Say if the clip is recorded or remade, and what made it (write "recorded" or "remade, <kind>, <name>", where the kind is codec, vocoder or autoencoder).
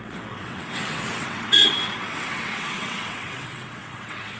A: remade, vocoder, WaveNeXt